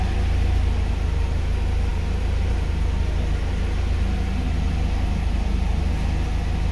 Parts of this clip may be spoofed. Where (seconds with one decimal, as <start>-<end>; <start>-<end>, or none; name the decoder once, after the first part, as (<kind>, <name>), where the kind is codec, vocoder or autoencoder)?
none